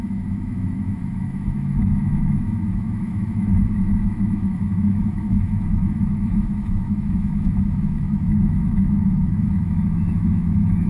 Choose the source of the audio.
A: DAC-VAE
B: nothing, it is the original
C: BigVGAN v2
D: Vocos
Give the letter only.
A